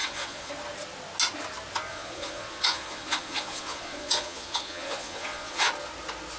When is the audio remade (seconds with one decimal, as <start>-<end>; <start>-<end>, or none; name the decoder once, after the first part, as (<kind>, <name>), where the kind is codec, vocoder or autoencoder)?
0.0-0.5 (vocoder, Vocos); 1.9-5.7